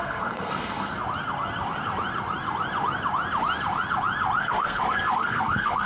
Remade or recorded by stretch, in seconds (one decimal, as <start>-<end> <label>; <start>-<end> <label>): 0.0-0.9 remade; 0.9-4.4 recorded; 4.4-5.9 remade